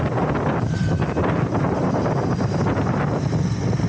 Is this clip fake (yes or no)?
no